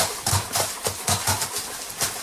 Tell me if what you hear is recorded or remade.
recorded